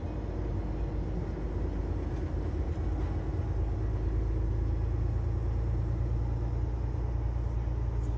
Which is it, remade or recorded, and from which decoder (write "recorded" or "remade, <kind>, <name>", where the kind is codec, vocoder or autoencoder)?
recorded